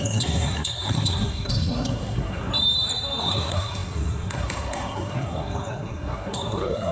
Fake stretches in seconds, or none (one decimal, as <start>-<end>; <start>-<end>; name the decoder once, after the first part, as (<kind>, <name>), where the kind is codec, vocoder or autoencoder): 0.0-2.5 (codec, SNAC); 3.2-6.9

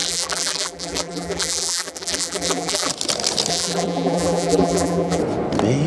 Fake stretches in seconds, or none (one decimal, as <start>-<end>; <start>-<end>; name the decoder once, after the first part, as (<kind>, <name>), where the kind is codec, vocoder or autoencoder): 0.0-2.9 (vocoder, BigVGAN v2); 3.5-5.2